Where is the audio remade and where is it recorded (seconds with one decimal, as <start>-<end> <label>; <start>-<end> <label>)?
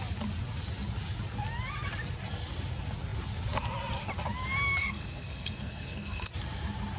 0.0-4.8 recorded; 4.8-6.3 remade; 6.3-7.0 recorded